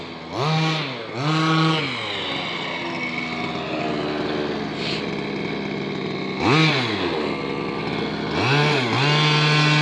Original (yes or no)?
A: yes